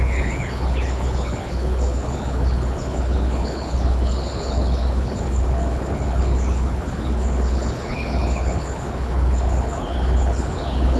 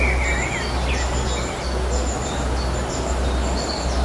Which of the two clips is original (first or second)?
second